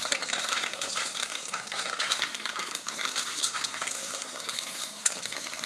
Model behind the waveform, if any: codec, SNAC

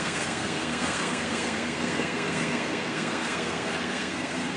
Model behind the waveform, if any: codec, SNAC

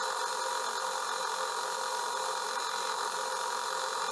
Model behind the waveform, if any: none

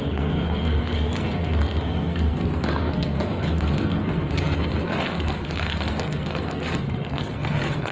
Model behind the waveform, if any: codec, SNAC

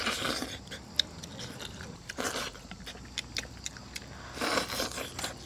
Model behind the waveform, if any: none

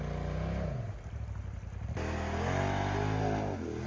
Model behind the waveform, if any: none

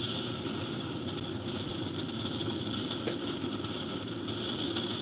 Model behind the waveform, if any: none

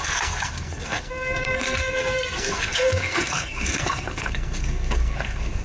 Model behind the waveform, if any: codec, SNAC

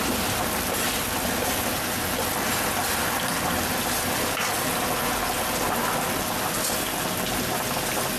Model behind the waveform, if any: none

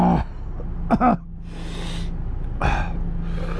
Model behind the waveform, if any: none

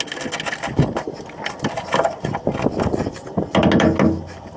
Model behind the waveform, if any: none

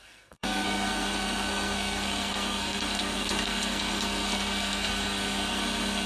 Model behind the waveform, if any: codec, SNAC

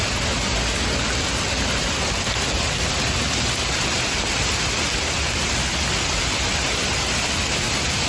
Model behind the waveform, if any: none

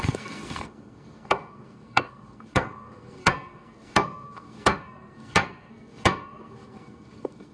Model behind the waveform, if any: codec, SNAC